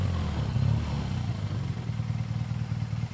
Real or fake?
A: real